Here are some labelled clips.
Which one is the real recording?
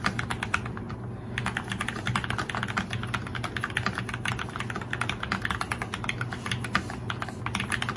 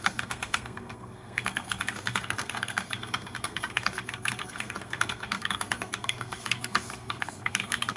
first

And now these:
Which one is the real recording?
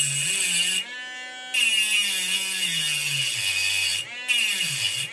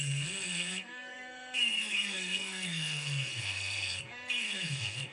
first